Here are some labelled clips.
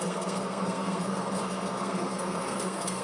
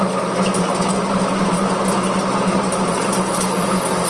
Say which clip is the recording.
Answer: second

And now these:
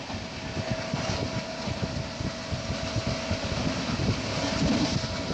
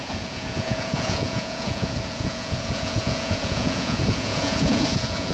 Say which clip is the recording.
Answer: first